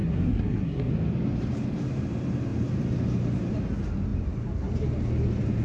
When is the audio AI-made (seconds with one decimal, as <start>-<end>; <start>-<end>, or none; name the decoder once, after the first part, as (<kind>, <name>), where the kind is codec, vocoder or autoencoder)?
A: 0.0-0.9 (codec, SNAC)